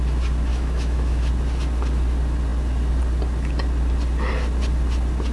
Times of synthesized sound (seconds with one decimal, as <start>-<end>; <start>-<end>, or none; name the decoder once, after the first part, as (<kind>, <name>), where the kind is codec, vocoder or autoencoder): 0.5-1.3 (autoencoder, DAC-VAE)